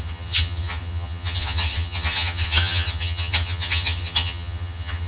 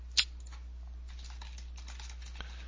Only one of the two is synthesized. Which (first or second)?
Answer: first